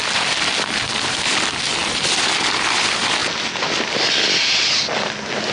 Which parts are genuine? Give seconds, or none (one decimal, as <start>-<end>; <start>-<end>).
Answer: 0.0-5.5